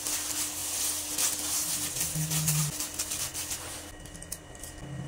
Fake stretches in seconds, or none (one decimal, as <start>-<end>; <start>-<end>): none